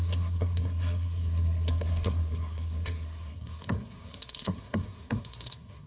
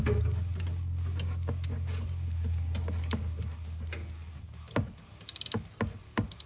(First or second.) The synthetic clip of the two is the first